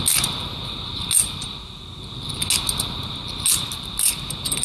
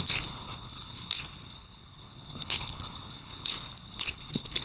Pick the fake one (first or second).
second